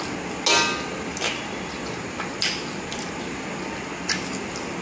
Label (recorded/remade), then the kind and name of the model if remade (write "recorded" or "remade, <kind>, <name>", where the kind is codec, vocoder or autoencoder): recorded